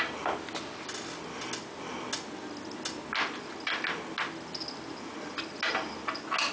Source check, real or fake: real